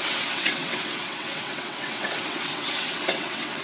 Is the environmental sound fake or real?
fake